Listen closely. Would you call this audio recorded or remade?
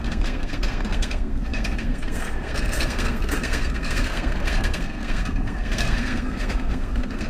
remade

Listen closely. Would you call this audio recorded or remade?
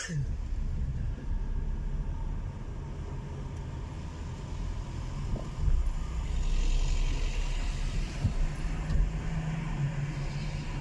recorded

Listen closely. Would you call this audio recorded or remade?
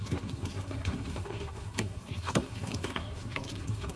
remade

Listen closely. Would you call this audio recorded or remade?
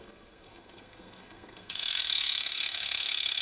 remade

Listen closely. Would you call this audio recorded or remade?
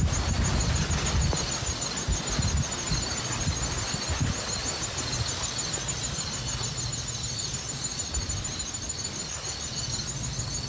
recorded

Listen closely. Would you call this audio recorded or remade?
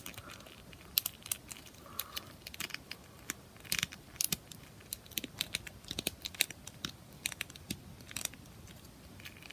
remade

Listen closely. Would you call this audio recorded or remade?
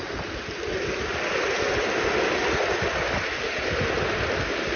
recorded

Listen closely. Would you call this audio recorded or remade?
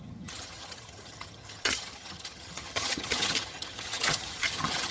remade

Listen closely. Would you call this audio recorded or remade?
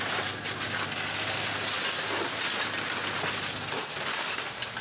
recorded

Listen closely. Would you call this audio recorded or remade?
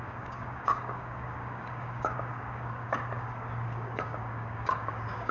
remade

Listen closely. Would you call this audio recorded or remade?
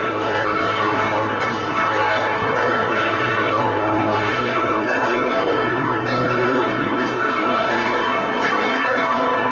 remade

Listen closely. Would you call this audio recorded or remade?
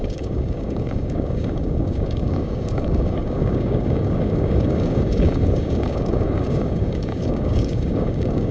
remade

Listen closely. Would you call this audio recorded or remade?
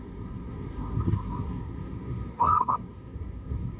remade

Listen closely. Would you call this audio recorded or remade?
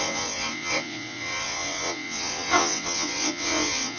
remade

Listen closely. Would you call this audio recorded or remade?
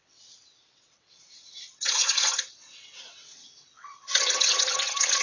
remade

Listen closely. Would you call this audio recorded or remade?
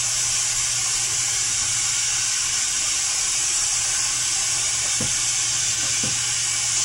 recorded